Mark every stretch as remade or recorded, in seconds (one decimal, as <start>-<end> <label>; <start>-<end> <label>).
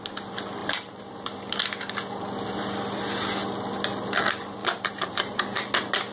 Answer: 0.0-0.6 recorded; 0.6-1.1 remade; 1.1-4.6 recorded; 4.6-5.4 remade; 5.4-6.1 recorded